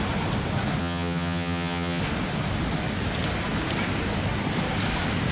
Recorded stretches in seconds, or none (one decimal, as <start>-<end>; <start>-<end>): 0.0-0.8; 2.0-5.3